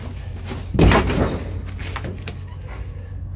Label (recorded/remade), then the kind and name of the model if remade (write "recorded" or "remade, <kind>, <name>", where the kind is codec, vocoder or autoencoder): recorded